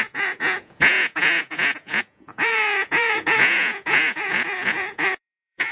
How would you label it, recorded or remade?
remade